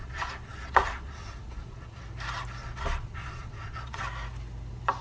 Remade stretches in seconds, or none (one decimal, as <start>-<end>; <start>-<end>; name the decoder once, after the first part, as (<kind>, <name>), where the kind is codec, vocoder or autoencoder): 0.0-2.0 (vocoder, Vocos); 2.6-4.0